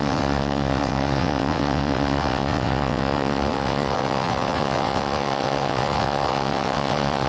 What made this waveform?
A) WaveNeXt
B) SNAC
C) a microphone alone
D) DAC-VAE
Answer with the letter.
A